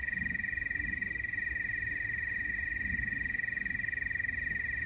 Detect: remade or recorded recorded